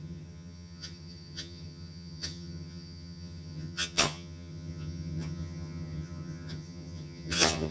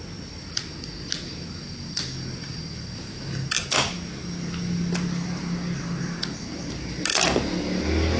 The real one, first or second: second